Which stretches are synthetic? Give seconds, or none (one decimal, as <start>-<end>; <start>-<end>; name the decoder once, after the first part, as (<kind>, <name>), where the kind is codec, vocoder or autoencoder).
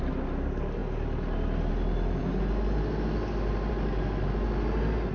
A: none